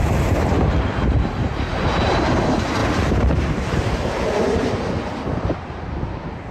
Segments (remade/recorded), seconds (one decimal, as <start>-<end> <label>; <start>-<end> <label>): 0.0-6.5 remade